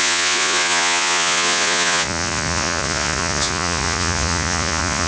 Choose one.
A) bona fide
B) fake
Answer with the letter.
B